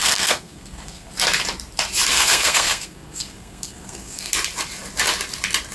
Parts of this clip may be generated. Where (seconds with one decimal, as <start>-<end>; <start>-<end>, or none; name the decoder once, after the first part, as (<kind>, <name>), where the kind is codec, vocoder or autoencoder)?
0.0-1.1 (codec, SNAC); 2.1-4.3